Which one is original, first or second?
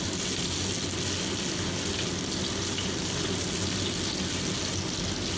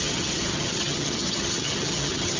first